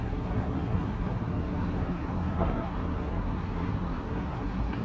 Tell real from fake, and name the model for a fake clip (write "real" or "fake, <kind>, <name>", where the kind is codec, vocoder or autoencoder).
fake, codec, SNAC